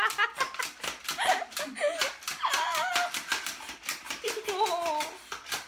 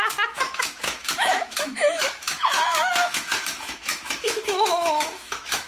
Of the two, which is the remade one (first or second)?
second